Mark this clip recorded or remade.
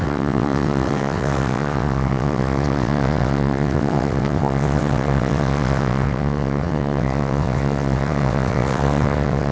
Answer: remade